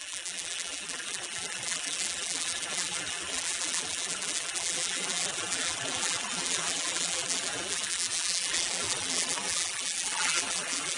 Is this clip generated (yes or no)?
yes